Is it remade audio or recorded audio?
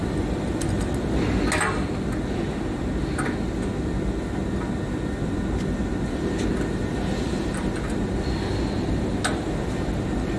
recorded